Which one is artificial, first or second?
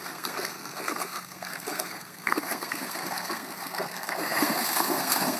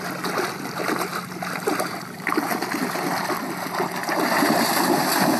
first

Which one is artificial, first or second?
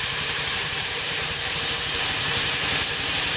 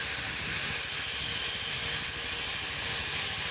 first